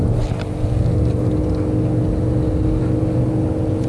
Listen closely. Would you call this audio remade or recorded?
recorded